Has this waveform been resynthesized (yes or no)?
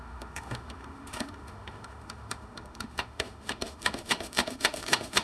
yes